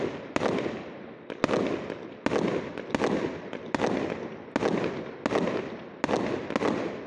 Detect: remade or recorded recorded